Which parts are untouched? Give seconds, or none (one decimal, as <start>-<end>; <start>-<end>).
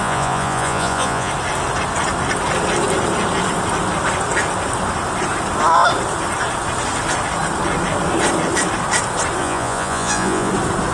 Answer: 1.3-9.4; 10.5-10.9